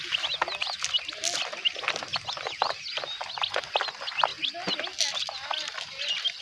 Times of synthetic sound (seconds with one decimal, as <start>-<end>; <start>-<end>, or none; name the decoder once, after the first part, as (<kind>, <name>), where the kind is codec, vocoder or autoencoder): none